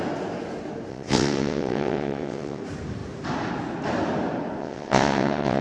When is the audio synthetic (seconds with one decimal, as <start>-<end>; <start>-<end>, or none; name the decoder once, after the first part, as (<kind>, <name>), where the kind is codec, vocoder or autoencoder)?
0.9-2.6 (vocoder, WaveNeXt); 4.6-5.6